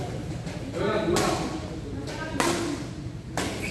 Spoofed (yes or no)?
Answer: no